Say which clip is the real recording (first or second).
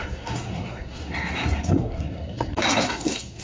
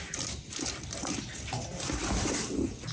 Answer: second